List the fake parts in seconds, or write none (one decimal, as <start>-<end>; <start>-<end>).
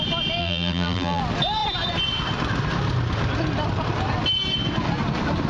0.4-1.2